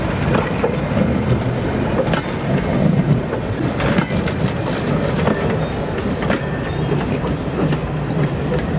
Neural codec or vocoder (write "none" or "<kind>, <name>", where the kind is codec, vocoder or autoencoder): none